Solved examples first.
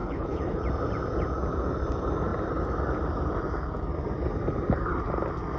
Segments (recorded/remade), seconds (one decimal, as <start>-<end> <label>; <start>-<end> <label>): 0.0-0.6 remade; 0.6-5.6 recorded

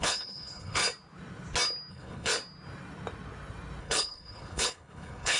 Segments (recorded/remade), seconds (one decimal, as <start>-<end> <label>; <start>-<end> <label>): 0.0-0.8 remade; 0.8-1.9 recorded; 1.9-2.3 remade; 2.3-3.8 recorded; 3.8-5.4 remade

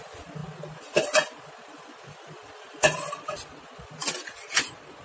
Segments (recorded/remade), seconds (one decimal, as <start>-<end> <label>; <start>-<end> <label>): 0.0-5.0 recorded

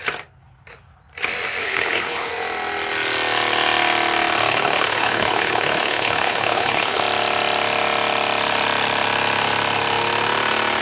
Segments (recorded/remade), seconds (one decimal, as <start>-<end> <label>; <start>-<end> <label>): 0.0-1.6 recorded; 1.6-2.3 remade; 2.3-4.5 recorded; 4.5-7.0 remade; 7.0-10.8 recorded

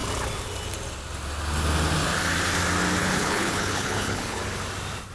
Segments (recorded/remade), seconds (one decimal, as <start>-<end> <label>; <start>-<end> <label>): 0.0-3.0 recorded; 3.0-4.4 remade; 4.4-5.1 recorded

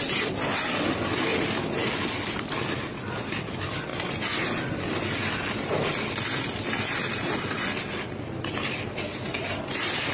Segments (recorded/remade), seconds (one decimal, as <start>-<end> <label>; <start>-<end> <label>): 0.0-10.1 recorded